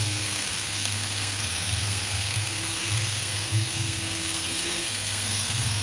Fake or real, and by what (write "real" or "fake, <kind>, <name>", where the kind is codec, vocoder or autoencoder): fake, codec, SNAC